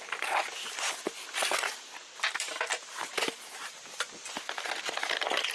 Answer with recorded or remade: recorded